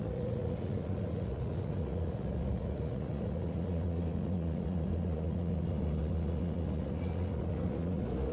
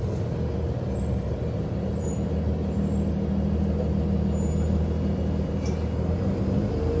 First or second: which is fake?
first